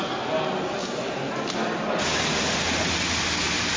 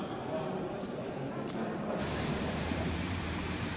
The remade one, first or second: second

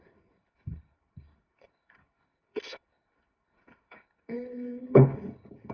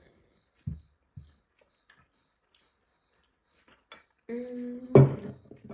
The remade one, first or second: first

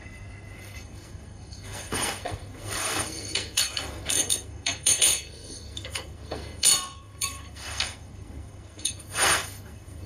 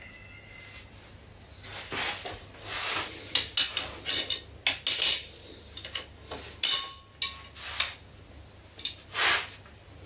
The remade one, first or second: first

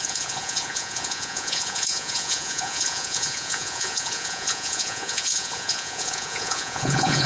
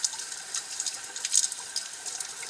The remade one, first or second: first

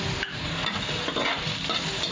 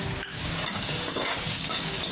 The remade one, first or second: second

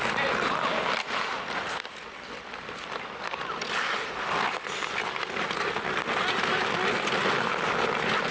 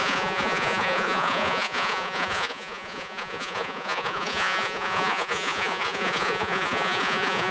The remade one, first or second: second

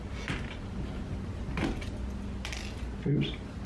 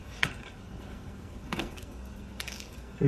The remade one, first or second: second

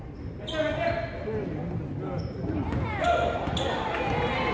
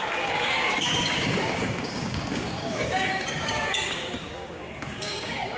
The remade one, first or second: second